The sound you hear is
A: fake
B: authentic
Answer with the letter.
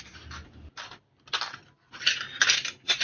B